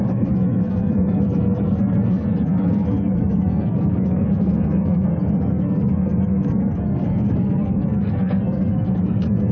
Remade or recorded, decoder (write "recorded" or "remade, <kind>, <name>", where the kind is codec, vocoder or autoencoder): remade, codec, SNAC